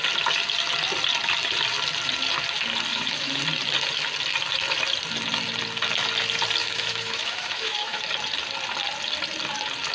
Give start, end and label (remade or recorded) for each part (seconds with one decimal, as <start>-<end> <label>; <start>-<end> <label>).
0.0-2.9 recorded; 2.9-3.4 remade; 3.4-6.6 recorded; 6.6-8.0 remade; 8.0-9.9 recorded